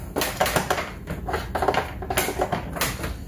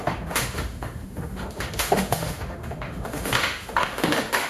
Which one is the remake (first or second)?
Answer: second